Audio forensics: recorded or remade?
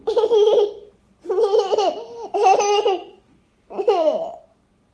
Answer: recorded